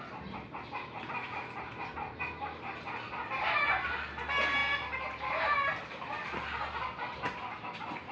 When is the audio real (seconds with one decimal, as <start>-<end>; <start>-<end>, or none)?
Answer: 0.0-8.1